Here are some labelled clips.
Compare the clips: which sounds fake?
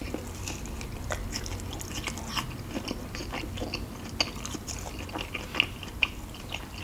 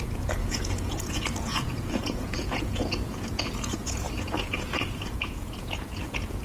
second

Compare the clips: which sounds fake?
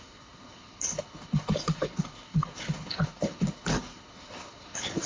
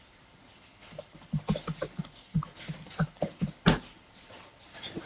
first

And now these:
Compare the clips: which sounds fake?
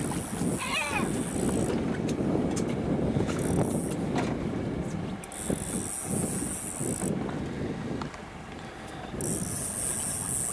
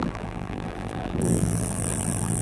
second